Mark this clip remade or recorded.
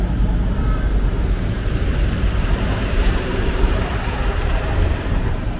remade